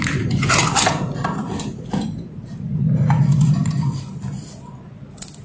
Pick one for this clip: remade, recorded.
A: recorded